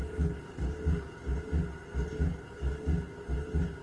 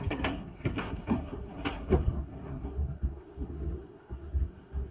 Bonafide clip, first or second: first